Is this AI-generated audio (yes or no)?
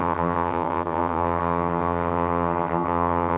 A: yes